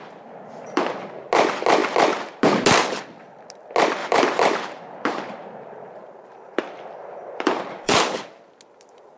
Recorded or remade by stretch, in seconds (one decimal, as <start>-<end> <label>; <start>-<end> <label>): 0.0-4.0 recorded; 4.0-6.6 remade; 6.6-7.0 recorded; 7.0-8.0 remade; 8.0-9.2 recorded